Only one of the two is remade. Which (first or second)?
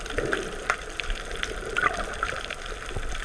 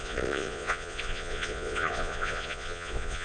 second